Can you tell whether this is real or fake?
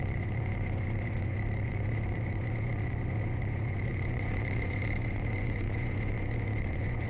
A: fake